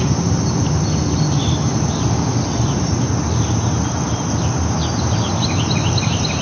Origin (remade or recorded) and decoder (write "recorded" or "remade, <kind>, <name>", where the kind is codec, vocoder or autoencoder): recorded